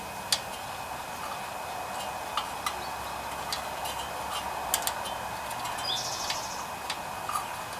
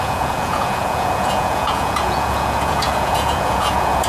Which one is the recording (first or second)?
first